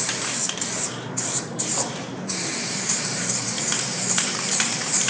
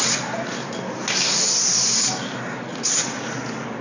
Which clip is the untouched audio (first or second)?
second